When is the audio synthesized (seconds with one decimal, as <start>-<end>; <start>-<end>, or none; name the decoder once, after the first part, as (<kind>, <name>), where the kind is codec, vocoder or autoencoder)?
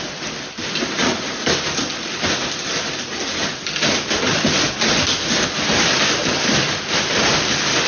none